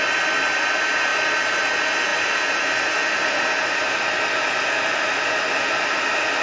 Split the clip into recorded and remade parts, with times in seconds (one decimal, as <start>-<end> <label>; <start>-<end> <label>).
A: 0.0-6.4 recorded